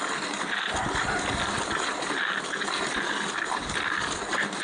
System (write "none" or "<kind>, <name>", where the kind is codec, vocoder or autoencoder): none